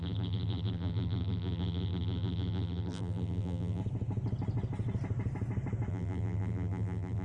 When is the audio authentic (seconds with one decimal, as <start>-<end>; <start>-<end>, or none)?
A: 3.8-5.9